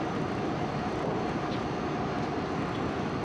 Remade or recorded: recorded